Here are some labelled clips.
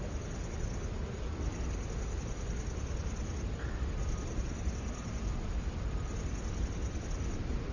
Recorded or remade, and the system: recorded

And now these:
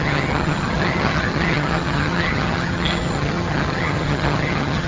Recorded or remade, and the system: remade, vocoder, HiFi-GAN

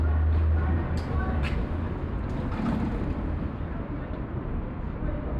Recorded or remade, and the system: recorded